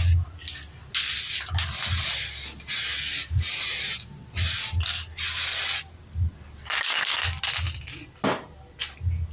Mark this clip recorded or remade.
recorded